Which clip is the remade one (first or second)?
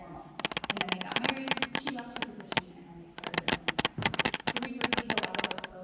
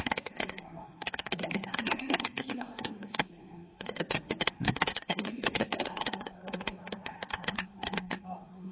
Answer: second